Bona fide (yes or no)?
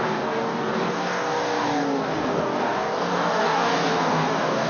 no